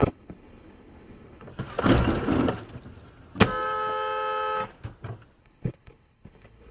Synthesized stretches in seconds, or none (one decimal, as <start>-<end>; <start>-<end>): 0.0-1.5; 5.4-6.7